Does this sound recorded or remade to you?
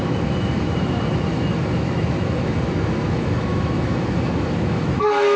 remade